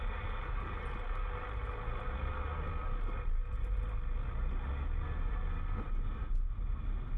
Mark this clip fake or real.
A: real